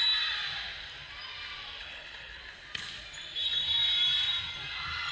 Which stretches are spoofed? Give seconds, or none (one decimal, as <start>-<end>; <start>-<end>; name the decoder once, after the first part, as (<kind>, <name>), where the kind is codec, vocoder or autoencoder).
1.8-2.4 (codec, HILCodec)